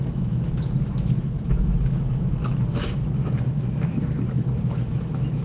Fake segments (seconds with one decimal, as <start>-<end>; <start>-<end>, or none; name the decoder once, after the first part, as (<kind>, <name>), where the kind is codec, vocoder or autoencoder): 0.0-2.4 (autoencoder, DAC-VAE); 3.2-5.4

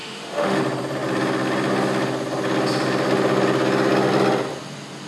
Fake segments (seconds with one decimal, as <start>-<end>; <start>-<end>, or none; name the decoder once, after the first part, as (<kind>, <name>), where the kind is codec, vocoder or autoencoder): 0.0-0.6 (autoencoder, DAC-VAE)